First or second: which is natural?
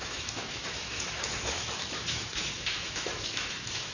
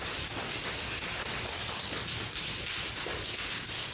second